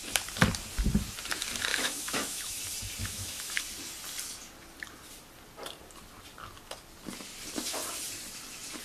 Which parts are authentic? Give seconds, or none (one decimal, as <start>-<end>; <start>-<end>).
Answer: 0.0-1.7; 2.6-3.0; 3.6-8.8